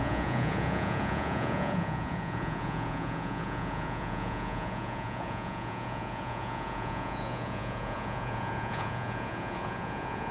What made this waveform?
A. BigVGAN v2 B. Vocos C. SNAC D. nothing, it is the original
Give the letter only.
B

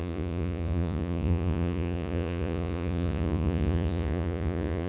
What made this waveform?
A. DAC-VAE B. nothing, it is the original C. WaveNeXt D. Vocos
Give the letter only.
D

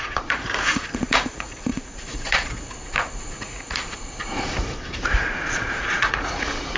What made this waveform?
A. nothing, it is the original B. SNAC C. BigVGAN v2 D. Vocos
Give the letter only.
D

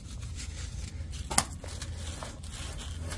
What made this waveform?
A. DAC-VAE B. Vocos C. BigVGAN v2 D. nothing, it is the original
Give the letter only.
D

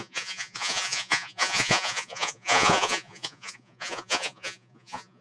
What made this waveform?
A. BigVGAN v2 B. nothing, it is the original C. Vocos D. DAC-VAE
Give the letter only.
C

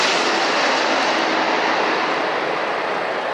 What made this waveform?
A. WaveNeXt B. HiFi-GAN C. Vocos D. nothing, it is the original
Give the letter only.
D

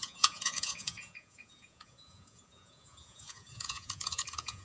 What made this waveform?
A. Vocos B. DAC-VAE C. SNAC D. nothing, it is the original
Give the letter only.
A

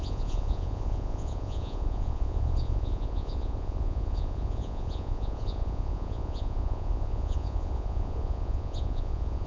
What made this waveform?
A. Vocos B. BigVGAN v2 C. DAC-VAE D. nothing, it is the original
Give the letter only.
A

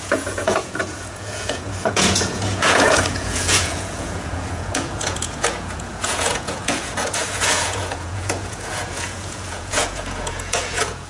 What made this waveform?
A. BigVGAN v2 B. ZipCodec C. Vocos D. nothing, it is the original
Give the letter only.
C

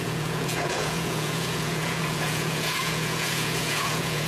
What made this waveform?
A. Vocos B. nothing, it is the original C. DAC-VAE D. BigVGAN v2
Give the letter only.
A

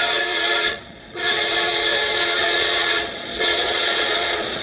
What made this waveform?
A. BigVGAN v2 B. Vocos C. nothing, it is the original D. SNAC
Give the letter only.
B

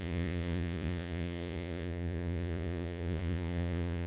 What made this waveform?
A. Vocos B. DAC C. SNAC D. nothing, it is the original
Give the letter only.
A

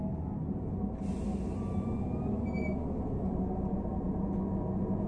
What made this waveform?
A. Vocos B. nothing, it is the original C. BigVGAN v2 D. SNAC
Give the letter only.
B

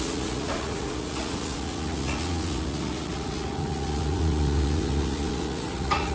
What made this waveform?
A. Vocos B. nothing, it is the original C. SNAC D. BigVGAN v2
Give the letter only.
A